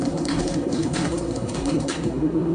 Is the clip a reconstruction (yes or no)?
yes